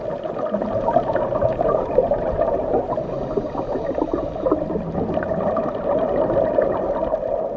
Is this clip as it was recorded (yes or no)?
yes